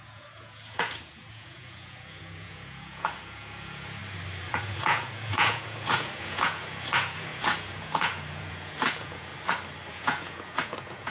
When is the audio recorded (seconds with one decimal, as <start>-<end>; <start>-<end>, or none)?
4.0-4.5; 9.3-9.9